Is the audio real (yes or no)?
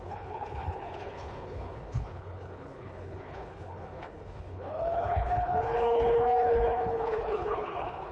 no